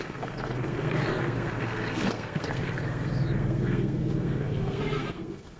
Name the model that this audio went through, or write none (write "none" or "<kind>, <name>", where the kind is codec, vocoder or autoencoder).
codec, SNAC